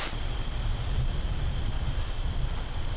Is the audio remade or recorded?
recorded